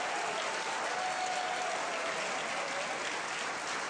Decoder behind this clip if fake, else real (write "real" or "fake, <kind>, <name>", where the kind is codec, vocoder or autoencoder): real